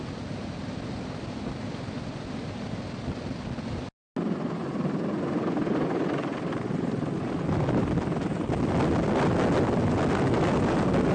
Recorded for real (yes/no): yes